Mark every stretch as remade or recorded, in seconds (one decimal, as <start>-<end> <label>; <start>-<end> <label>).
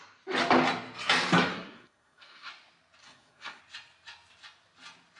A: 0.0-1.5 recorded; 1.5-2.5 remade; 2.5-3.0 recorded; 3.0-3.6 remade; 3.6-5.2 recorded